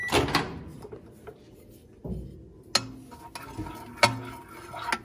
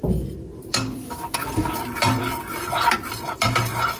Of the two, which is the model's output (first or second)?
second